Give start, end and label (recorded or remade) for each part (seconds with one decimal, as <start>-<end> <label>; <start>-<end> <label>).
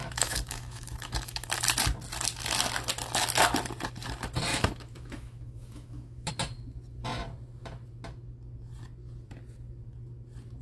0.0-1.5 remade; 1.5-4.5 recorded; 4.5-6.3 remade; 6.3-10.6 recorded